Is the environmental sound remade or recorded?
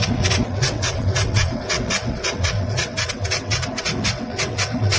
remade